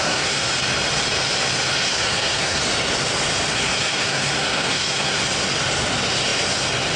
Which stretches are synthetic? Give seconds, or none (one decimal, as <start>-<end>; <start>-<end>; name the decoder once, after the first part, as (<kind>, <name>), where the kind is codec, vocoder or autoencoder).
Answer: 0.0-0.5 (codec, SNAC); 1.9-2.6; 3.5-5.2